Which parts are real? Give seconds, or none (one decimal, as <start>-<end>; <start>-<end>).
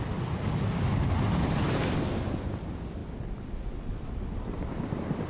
0.0-5.3